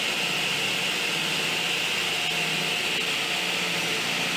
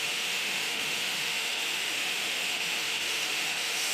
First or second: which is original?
first